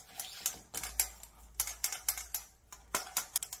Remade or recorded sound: recorded